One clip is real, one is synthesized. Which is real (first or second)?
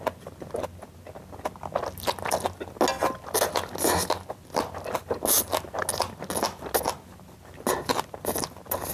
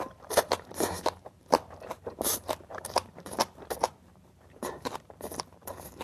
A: first